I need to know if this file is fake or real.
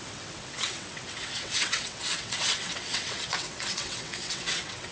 fake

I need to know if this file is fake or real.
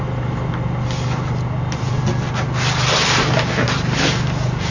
real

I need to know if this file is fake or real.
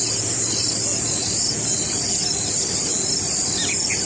real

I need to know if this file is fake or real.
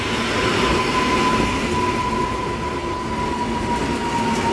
real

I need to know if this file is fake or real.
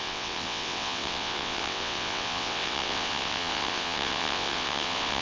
fake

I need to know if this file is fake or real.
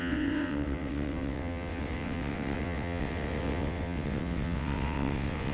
fake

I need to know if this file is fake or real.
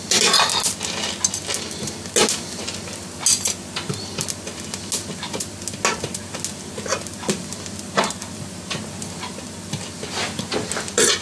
real